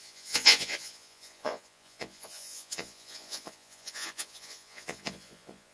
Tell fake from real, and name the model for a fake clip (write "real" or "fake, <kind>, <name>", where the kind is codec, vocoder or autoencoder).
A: fake, vocoder, Vocos